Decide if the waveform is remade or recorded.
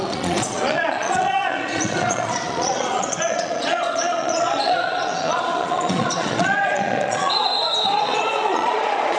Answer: remade